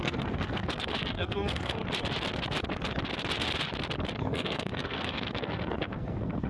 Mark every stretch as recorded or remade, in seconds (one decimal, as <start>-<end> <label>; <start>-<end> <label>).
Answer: 0.0-1.8 remade; 1.8-4.2 recorded; 4.2-6.5 remade